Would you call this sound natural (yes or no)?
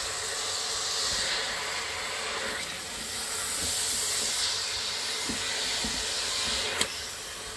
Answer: yes